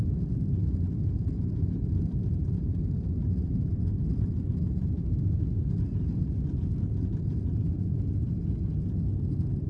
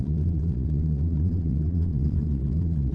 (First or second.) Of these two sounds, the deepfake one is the second